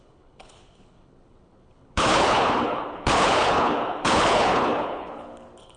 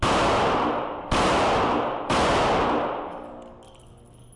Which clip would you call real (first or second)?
second